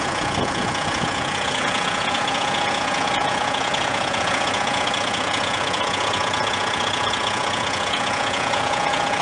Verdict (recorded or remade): remade